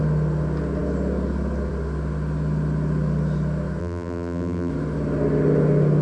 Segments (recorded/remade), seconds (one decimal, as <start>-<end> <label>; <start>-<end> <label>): 0.0-3.8 recorded; 3.8-4.7 remade; 4.7-6.0 recorded